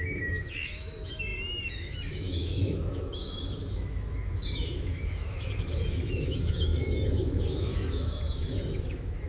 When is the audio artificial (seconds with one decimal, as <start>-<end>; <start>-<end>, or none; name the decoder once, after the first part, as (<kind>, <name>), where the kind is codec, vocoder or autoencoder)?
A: 0.0-9.3 (autoencoder, DAC-VAE)